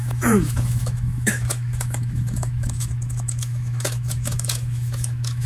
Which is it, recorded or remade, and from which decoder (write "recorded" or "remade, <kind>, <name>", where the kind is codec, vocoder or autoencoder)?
remade, autoencoder, DAC-VAE